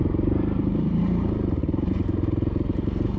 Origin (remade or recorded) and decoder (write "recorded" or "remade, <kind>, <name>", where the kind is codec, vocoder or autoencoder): remade, vocoder, BigVGAN v2